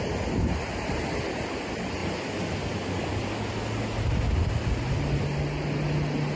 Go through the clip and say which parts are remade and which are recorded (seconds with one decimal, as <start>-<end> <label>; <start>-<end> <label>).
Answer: 0.0-6.4 recorded